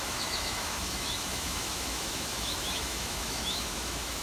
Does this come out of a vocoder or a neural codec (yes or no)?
yes